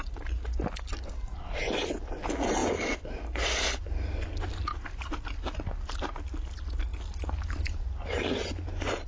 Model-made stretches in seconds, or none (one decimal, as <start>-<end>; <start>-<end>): none